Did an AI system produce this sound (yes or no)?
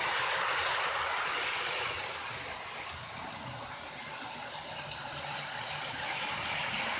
no